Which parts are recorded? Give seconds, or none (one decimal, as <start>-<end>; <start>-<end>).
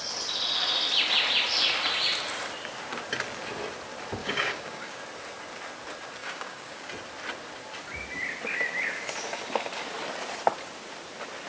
0.0-4.2; 5.0-6.2; 6.9-11.5